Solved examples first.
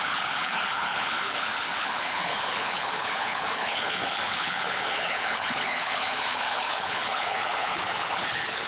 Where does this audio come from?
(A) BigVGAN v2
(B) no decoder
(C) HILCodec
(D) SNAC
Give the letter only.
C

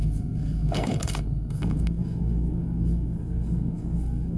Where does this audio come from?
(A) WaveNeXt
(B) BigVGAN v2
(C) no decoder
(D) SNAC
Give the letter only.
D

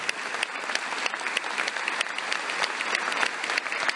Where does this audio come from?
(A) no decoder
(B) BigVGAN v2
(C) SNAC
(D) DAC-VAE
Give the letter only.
A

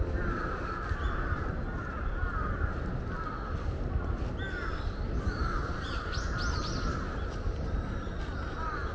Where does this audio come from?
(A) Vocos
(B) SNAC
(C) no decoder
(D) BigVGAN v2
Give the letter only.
C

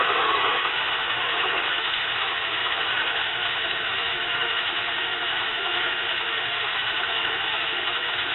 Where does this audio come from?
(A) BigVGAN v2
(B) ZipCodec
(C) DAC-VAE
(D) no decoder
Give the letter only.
C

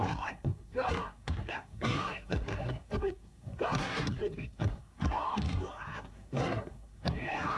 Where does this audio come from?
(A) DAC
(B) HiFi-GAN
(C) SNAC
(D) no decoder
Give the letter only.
C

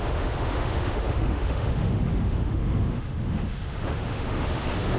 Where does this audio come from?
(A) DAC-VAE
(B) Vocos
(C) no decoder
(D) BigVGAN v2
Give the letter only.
A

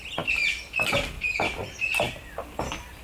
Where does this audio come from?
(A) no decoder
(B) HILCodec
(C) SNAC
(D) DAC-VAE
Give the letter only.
A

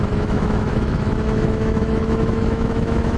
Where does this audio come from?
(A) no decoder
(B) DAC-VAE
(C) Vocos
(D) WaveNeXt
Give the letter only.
B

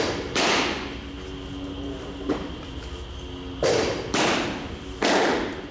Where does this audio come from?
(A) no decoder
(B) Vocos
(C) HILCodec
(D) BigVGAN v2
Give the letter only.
A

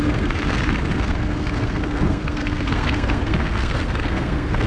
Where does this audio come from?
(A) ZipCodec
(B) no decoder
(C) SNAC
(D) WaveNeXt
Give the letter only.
C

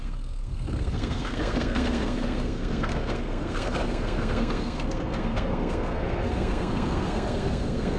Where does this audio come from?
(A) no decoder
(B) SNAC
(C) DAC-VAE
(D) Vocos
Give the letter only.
B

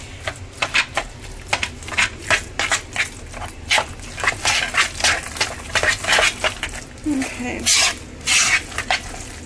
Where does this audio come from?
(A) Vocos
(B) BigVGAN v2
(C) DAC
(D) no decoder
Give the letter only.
D